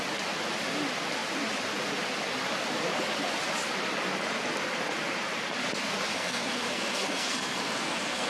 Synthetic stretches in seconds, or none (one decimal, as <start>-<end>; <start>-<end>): 6.1-8.3